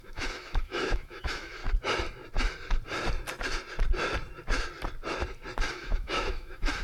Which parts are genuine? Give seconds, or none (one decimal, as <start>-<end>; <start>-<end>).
1.6-5.7